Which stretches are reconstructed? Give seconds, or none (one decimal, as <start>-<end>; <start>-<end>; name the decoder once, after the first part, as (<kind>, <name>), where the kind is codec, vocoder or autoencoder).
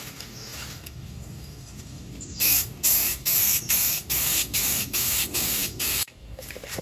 0.0-6.8 (codec, DAC)